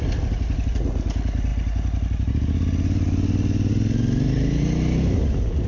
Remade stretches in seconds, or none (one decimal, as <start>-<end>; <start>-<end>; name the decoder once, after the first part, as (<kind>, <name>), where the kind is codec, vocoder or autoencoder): none